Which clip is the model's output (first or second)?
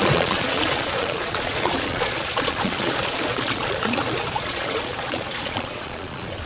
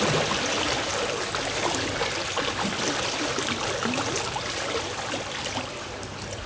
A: first